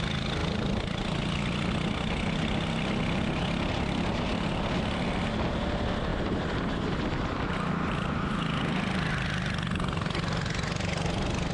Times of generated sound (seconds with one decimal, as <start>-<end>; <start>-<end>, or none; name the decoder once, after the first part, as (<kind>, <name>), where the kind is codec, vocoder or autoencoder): 6.1-7.0 (vocoder, BigVGAN v2)